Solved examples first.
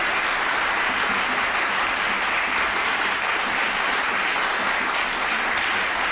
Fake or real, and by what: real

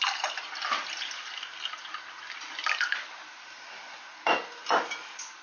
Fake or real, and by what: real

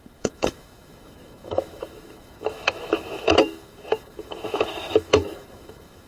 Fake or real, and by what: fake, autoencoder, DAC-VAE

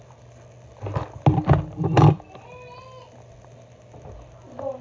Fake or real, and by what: real